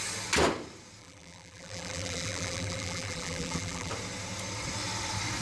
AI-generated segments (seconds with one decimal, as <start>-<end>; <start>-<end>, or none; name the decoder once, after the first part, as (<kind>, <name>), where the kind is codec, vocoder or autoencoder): 1.0-3.9 (vocoder, BigVGAN v2)